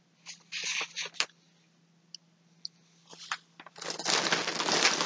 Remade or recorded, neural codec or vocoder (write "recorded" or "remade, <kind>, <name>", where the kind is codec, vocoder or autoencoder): recorded